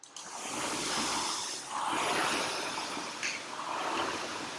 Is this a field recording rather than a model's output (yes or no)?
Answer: yes